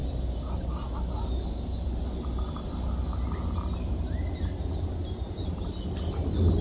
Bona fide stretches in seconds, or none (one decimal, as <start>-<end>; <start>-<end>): 0.0-6.6